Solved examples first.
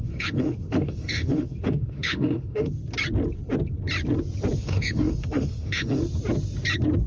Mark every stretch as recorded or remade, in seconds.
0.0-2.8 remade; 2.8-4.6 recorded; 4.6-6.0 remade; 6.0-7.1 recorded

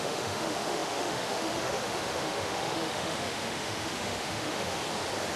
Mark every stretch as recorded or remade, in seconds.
0.0-4.8 remade; 4.8-5.4 recorded

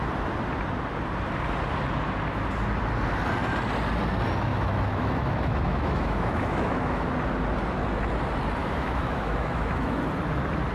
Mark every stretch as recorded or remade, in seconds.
0.0-4.5 recorded; 4.5-7.1 remade; 7.1-8.6 recorded; 8.6-10.0 remade; 10.0-10.7 recorded

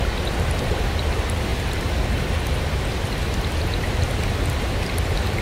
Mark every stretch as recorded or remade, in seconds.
0.0-5.4 recorded

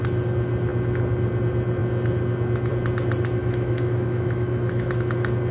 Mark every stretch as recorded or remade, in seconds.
0.0-3.4 recorded; 3.4-4.9 remade; 4.9-5.5 recorded